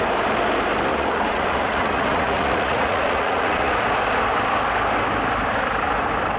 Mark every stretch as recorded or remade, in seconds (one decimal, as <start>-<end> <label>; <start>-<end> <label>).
0.0-0.9 recorded; 0.9-3.7 remade; 3.7-6.4 recorded